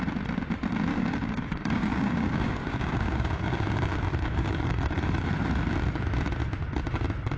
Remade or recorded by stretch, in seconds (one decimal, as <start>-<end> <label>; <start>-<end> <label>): 0.0-0.9 recorded; 0.9-5.3 remade; 5.3-7.4 recorded